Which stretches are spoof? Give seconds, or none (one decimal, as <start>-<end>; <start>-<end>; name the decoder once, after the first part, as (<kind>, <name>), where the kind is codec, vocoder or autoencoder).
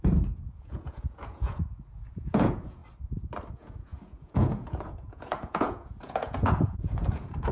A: 0.0-2.8 (vocoder, Vocos); 3.5-7.5